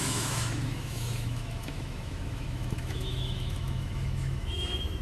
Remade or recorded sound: remade